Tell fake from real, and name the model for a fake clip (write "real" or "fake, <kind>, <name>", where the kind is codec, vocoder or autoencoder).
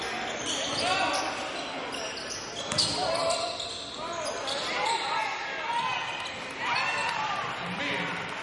real